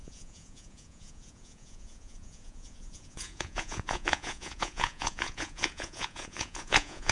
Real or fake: fake